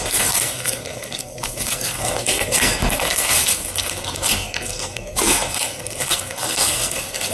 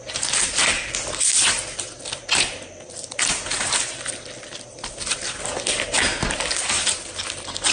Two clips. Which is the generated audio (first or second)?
first